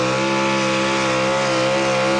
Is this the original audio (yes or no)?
yes